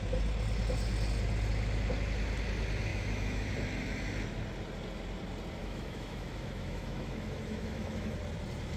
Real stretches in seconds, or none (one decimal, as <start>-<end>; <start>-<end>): 0.0-2.9; 3.5-5.6; 8.2-8.8